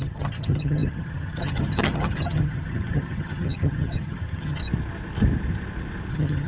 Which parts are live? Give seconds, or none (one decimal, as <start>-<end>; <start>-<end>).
4.6-6.1